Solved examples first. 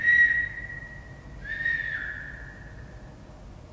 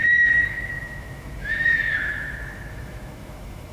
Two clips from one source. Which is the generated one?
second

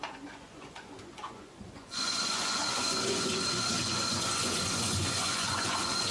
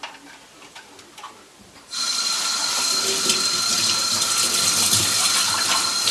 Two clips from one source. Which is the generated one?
first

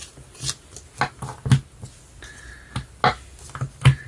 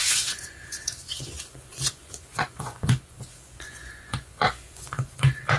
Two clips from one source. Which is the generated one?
second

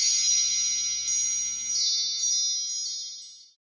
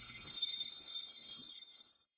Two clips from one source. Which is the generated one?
second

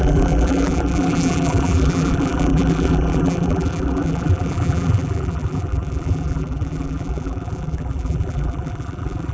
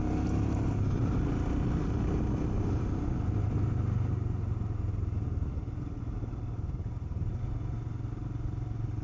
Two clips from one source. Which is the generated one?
first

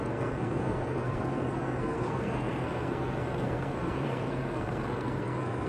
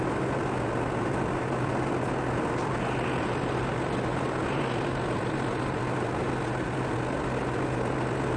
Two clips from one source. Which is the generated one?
first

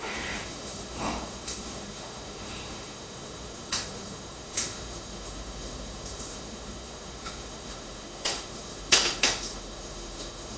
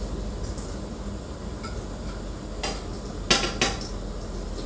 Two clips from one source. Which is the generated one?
first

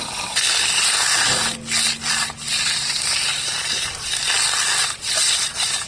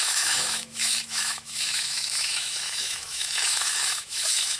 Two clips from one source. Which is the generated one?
second